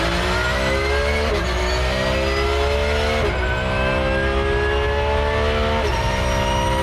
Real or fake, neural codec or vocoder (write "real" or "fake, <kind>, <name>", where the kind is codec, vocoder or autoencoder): real